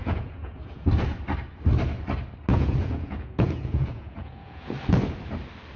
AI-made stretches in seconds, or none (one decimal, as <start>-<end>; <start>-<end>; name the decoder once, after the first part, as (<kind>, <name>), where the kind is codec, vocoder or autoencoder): 0.0-0.9 (vocoder, Vocos); 2.5-4.7